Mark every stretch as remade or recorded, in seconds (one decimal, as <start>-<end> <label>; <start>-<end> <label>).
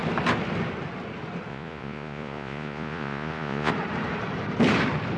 0.0-1.5 recorded; 1.5-3.7 remade; 3.7-5.2 recorded